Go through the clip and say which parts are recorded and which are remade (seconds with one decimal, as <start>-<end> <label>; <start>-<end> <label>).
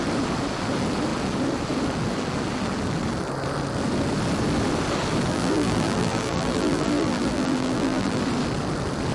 0.0-5.3 recorded; 5.3-8.2 remade; 8.2-9.1 recorded